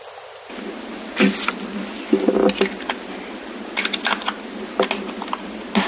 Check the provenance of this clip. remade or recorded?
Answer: recorded